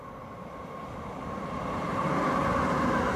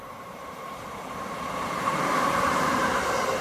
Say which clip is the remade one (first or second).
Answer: second